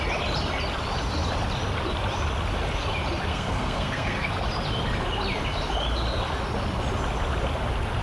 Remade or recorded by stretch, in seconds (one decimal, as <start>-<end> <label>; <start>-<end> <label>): 0.0-3.3 recorded; 3.3-4.3 remade; 4.3-8.0 recorded